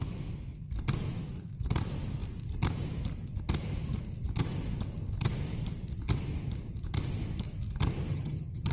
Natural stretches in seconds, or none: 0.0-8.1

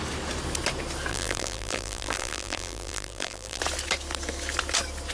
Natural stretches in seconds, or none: 0.0-1.1; 3.6-5.1

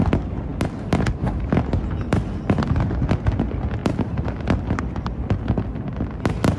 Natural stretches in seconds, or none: 0.0-6.6

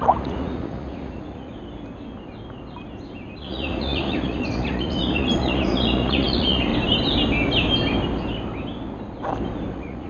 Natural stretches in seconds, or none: 1.5-3.4; 6.7-9.7

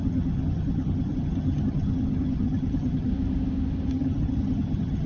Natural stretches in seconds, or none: 3.1-3.9

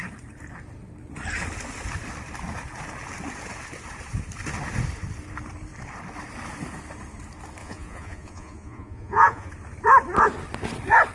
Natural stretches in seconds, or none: 0.0-7.6; 9.5-11.1

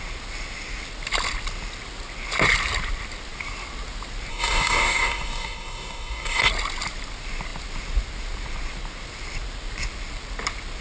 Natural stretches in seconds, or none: 0.0-4.3; 6.5-10.8

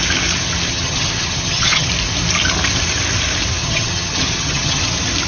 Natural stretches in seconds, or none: 0.0-0.7; 1.9-3.6; 4.8-5.3